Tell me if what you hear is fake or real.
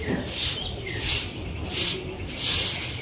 real